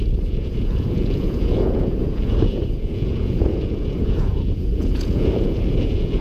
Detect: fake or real fake